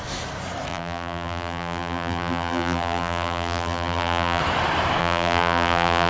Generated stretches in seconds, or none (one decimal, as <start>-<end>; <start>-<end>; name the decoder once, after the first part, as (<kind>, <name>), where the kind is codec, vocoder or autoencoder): 0.7-4.4 (vocoder, BigVGAN v2); 5.0-6.1